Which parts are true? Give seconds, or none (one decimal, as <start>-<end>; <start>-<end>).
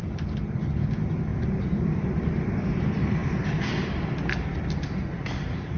0.0-1.3; 2.4-5.8